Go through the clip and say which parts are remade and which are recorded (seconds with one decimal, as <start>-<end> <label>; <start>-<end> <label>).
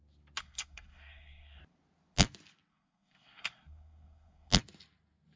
0.0-0.4 recorded; 0.4-1.6 remade; 1.6-2.7 recorded; 2.7-4.5 remade; 4.5-5.4 recorded